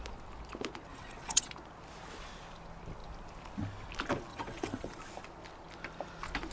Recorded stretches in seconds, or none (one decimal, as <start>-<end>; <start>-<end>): 0.0-0.9; 1.5-4.3; 5.0-6.5